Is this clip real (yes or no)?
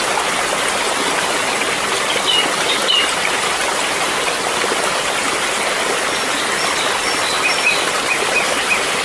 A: yes